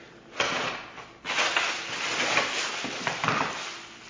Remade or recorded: recorded